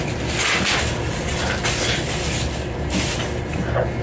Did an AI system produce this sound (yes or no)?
no